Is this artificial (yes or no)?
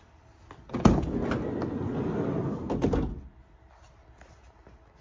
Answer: no